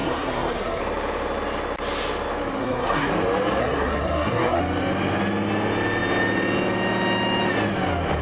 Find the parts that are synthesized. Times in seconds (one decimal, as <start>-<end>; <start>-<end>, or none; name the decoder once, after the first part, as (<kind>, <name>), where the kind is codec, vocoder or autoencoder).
0.0-0.8 (codec, SNAC); 2.6-3.1; 3.6-4.6